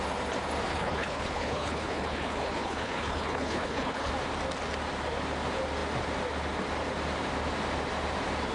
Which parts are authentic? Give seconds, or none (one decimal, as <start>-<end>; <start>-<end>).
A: 0.0-0.7; 4.1-8.5